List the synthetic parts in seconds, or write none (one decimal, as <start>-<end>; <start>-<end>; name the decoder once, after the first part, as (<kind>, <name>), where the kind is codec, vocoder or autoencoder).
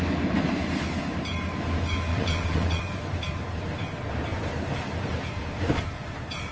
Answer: 2.1-2.8 (vocoder, WaveNeXt)